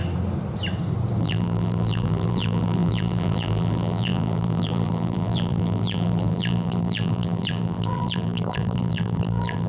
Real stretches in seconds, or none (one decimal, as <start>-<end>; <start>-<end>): 0.0-1.2